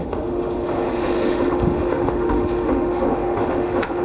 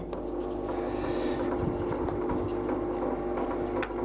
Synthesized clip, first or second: first